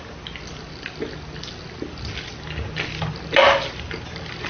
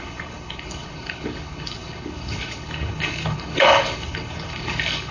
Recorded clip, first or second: first